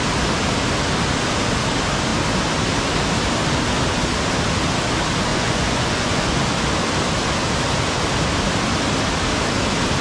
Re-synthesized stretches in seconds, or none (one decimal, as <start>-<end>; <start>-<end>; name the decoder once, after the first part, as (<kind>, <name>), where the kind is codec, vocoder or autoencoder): 5.3-6.4 (vocoder, Vocos)